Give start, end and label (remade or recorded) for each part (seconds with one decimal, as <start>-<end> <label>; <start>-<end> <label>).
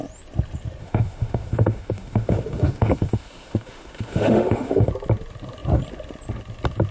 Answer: 0.0-0.8 recorded; 0.8-4.9 remade; 4.9-6.9 recorded